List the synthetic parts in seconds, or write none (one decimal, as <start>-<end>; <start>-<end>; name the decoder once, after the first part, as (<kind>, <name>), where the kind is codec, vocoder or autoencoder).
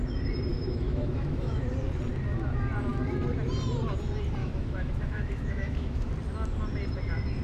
0.5-1.7 (autoencoder, DAC-VAE); 4.4-6.1